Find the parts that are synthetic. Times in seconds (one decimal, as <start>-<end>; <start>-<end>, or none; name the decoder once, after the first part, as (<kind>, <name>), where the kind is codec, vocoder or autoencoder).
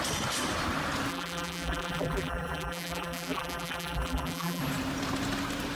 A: 1.1-4.6 (vocoder, BigVGAN v2)